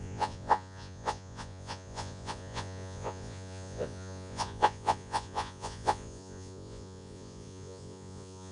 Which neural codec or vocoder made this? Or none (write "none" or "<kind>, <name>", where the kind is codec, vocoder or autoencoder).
vocoder, Vocos